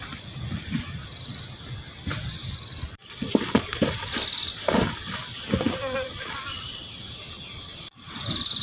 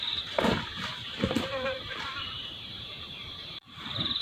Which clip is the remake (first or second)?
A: second